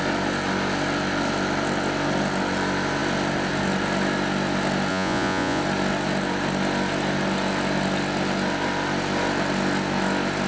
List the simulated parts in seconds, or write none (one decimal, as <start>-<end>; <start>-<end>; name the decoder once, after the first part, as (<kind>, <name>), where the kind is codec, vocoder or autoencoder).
4.9-5.6 (vocoder, Vocos)